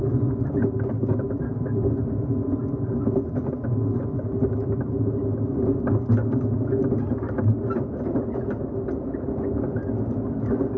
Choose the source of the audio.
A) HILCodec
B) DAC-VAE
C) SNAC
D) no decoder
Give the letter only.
D